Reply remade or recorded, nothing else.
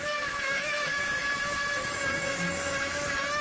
remade